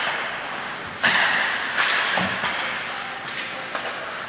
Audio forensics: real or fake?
real